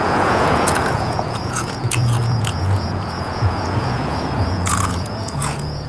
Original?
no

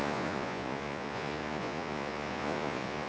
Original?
no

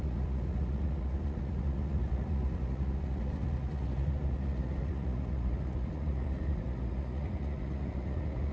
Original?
no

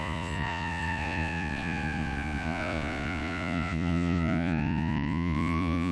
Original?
no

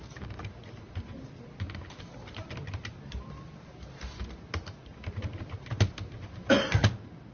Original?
yes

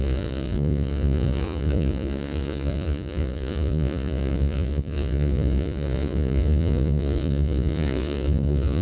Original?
no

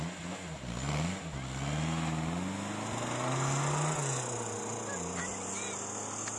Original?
yes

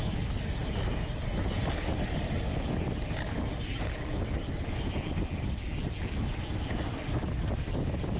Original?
yes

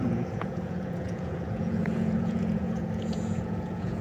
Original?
no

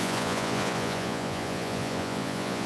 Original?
no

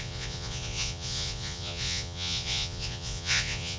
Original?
no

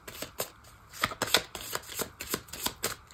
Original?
yes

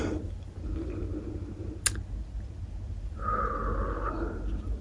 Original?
yes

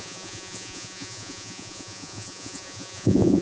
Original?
no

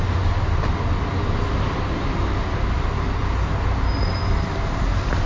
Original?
yes